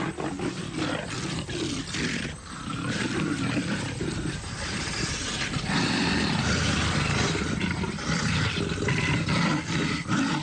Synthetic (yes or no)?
no